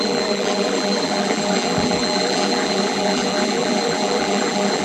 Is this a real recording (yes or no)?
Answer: no